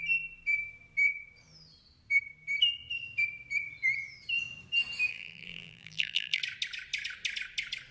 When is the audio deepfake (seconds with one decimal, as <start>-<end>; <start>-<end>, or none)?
5.1-6.4